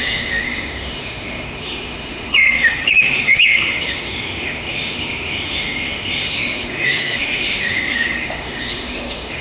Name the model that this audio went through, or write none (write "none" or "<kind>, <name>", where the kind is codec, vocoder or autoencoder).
autoencoder, DAC-VAE